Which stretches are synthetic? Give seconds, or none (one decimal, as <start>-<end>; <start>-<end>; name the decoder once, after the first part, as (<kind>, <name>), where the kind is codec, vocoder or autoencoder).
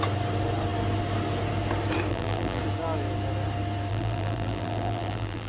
2.1-2.6 (vocoder, BigVGAN v2); 3.9-5.5